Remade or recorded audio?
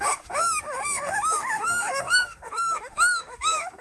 remade